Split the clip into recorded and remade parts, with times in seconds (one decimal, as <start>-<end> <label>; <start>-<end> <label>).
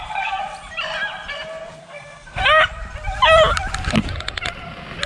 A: 0.0-0.4 remade; 0.4-1.8 recorded; 1.8-2.4 remade; 2.4-5.1 recorded